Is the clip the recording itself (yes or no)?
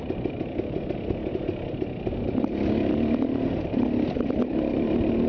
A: yes